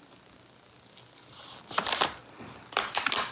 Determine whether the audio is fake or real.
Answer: real